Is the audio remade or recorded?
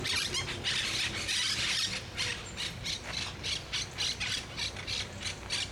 recorded